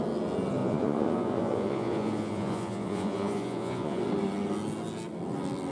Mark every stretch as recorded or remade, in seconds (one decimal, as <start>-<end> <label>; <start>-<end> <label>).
0.0-0.6 recorded; 0.6-4.0 remade; 4.0-5.7 recorded